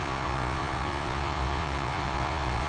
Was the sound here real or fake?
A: fake